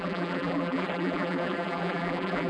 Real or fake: fake